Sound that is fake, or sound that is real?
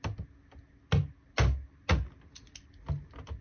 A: real